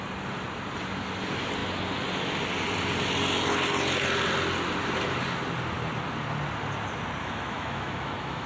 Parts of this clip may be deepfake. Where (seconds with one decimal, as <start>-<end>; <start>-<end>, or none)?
7.2-8.5